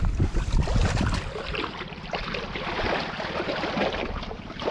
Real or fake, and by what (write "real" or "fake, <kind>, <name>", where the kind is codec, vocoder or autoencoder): real